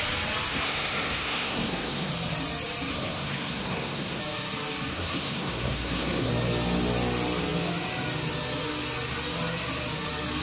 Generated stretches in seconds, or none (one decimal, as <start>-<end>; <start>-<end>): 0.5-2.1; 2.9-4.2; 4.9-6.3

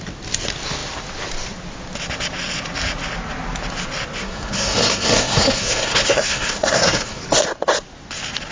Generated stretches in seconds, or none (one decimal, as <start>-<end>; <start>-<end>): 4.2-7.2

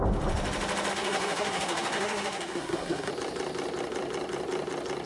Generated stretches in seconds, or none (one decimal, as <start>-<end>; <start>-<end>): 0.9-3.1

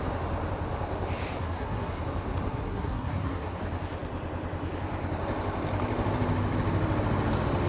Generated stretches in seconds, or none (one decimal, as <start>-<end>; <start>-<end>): 1.4-2.0; 2.5-3.6

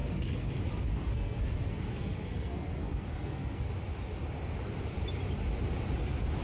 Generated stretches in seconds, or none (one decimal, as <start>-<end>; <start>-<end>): 0.0-0.5; 0.9-3.7

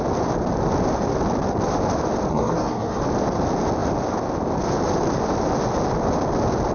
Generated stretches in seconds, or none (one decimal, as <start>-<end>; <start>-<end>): 2.3-3.0

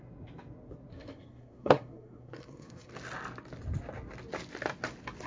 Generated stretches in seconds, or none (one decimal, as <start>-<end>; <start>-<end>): 0.9-2.9